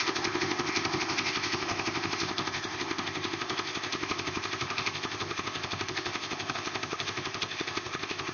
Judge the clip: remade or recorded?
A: remade